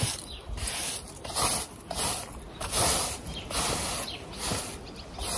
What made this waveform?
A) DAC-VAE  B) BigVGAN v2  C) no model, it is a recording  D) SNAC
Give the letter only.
C